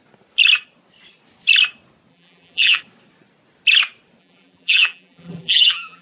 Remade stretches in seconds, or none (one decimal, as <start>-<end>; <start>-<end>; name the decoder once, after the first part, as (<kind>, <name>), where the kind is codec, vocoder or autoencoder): 2.1-2.8 (vocoder, BigVGAN v2); 4.2-6.0